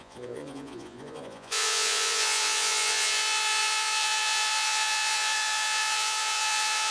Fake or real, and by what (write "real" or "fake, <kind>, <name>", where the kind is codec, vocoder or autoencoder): fake, vocoder, Vocos